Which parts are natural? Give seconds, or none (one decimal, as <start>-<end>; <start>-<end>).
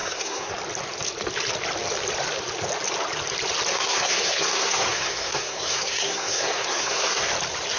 0.5-3.7; 7.3-7.8